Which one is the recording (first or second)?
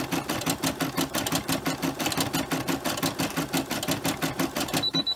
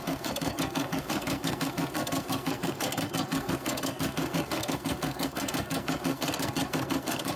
first